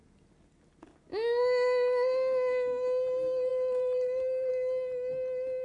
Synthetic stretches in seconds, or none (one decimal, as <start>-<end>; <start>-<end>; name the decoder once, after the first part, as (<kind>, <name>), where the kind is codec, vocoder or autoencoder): 3.5-4.5 (vocoder, BigVGAN v2)